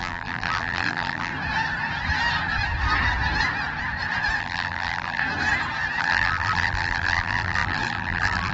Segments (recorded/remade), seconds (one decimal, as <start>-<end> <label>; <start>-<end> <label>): 0.0-1.3 remade; 1.3-4.4 recorded; 4.4-5.2 remade; 5.2-6.0 recorded; 6.0-8.5 remade